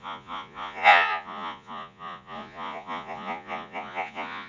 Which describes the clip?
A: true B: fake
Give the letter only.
B